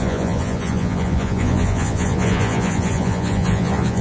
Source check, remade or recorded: remade